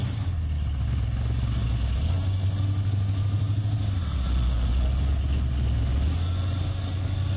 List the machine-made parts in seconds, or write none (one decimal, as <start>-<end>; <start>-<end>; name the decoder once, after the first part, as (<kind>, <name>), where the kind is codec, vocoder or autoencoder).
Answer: none